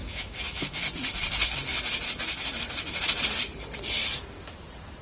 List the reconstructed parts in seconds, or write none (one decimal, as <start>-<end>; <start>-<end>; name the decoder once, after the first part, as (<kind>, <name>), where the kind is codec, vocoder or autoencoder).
0.0-0.9 (autoencoder, DAC-VAE)